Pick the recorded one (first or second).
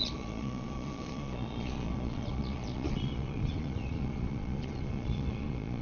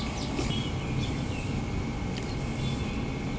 second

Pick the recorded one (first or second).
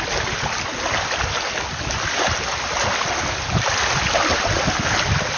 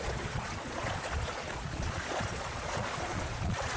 first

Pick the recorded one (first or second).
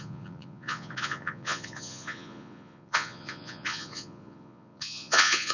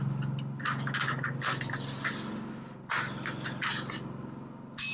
second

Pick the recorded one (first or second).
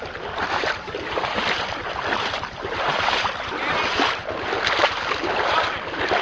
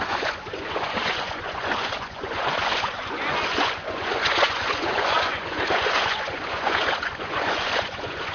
first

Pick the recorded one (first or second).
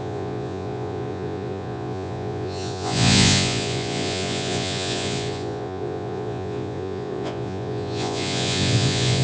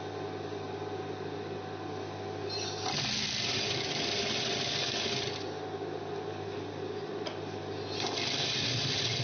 second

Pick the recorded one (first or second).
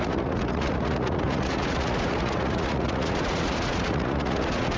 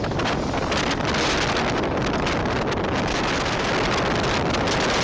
second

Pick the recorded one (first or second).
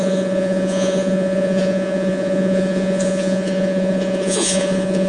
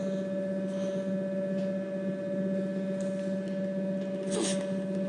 second